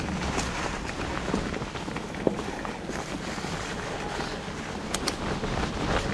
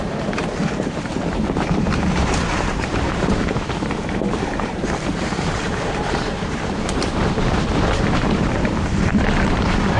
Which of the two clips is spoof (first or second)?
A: second